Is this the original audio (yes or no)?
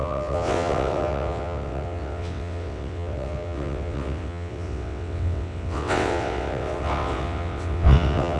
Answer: no